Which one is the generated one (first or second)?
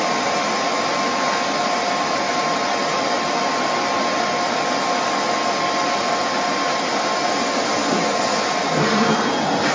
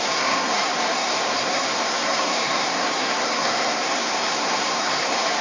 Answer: second